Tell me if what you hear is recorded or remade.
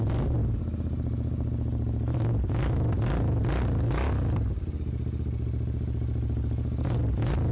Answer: recorded